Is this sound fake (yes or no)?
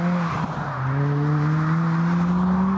no